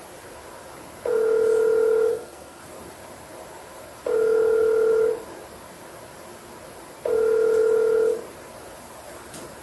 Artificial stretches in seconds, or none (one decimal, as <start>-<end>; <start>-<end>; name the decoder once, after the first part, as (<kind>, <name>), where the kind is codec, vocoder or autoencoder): 2.1-2.6 (codec, SNAC)